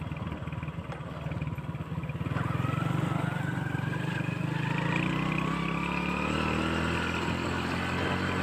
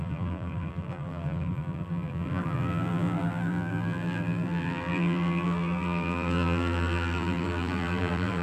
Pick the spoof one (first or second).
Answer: second